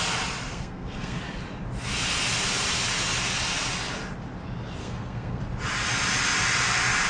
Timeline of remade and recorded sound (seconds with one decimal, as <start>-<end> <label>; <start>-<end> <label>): 0.0-0.5 recorded; 0.5-1.2 remade; 1.2-4.8 recorded; 4.8-5.4 remade; 5.4-7.1 recorded